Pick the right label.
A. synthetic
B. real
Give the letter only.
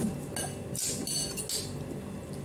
B